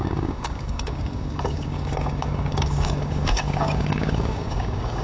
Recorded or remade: remade